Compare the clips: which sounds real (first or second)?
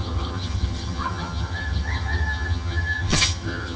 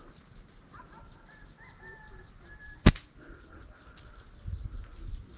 second